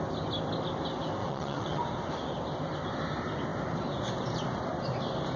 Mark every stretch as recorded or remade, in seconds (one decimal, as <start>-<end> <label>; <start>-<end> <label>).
0.0-1.2 recorded; 1.2-1.8 remade; 1.8-5.4 recorded